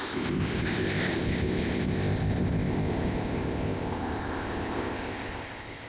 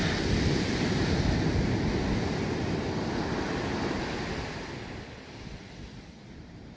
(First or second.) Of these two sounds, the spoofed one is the first